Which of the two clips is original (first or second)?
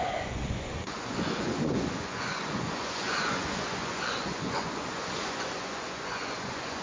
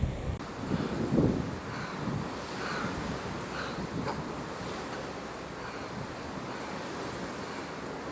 second